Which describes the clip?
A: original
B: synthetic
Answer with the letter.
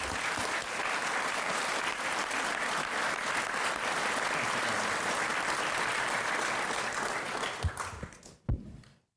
B